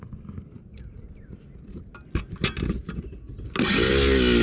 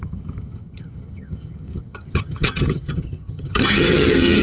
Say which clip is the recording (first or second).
first